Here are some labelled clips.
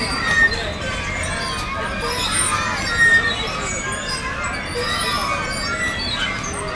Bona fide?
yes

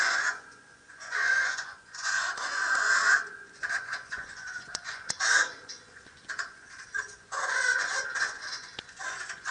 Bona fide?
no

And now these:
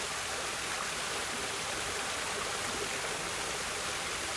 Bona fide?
yes